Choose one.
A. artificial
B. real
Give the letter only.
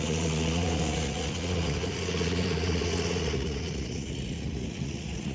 A